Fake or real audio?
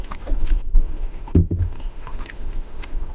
fake